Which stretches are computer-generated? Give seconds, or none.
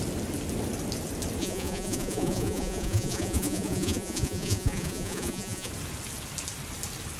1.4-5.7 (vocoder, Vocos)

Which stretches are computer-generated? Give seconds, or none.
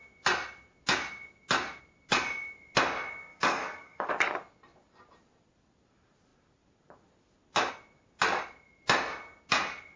3.3-4.1 (codec, DAC)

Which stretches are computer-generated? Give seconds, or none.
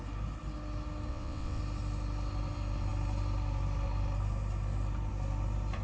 1.1-1.6 (vocoder, WaveNeXt)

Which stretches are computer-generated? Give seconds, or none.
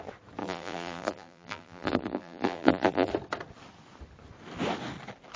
0.4-3.1 (vocoder, BigVGAN v2)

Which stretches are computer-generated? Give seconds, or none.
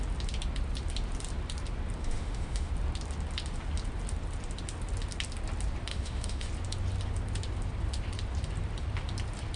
2.0-2.7 (autoencoder, DAC-VAE); 5.9-6.5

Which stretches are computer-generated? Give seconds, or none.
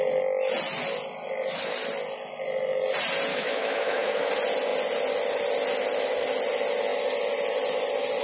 3.3-4.3 (autoencoder, DAC-VAE)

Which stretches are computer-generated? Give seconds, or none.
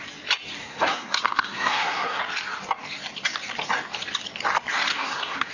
0.6-2.2 (codec, SNAC); 4.9-5.5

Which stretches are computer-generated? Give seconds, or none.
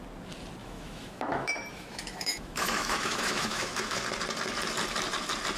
0.6-4.0 (autoencoder, DAC-VAE)